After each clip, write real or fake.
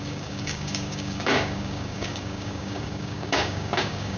fake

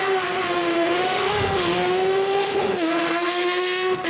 fake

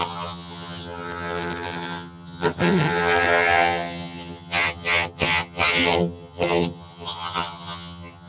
fake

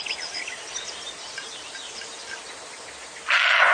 real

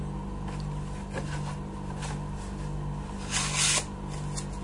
real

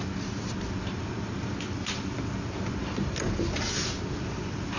real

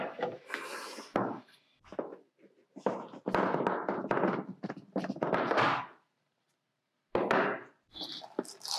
real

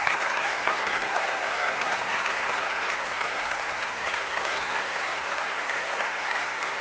fake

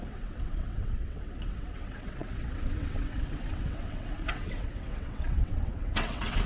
fake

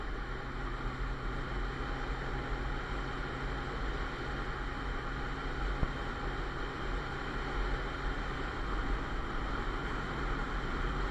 real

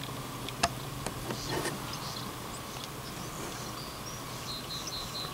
real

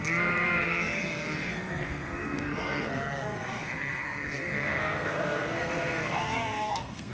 fake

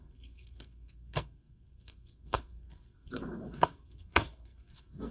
fake